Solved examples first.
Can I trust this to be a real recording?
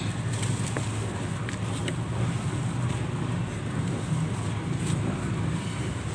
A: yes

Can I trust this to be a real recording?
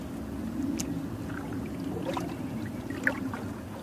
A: yes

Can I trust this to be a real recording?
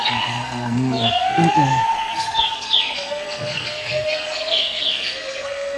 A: no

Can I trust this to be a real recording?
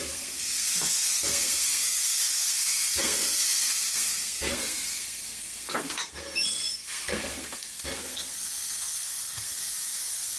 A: no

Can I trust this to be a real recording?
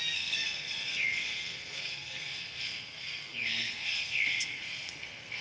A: no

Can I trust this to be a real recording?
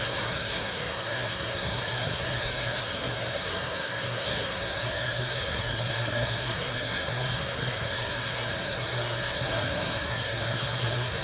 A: no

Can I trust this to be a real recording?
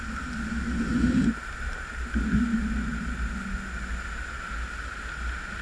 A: yes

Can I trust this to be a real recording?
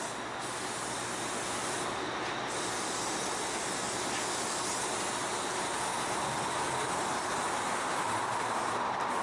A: yes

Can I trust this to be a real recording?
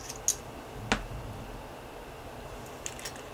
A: yes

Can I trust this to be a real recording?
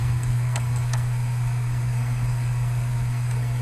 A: no